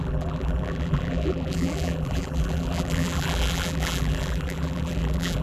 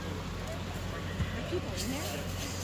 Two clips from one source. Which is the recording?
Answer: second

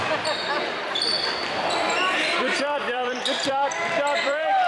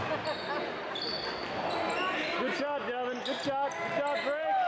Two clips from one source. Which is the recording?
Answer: second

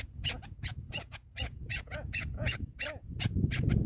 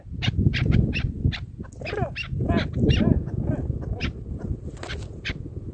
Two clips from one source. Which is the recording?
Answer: second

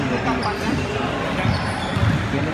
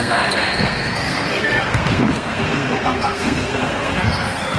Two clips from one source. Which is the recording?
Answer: first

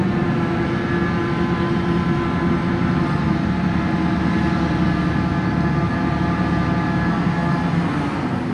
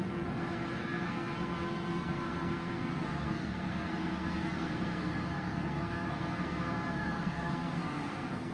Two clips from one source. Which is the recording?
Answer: first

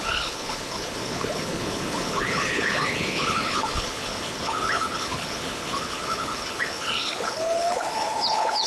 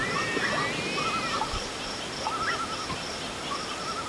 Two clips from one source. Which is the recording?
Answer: second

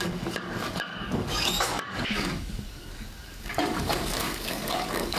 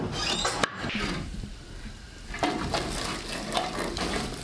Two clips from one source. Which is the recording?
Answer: second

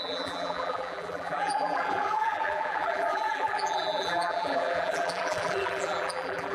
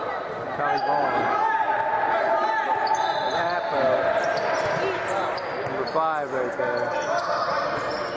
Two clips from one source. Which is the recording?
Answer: second